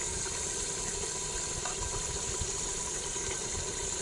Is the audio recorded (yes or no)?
yes